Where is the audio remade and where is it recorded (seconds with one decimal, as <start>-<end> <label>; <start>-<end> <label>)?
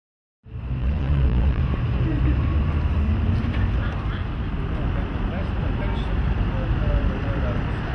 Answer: 0.0-0.8 recorded; 0.8-1.6 remade; 1.6-7.9 recorded